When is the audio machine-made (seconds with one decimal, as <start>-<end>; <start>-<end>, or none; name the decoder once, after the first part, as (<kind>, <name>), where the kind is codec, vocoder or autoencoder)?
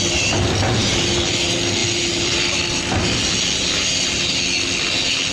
0.8-1.3 (vocoder, BigVGAN v2); 1.8-2.8